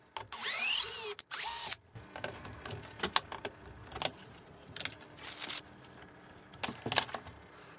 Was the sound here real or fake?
real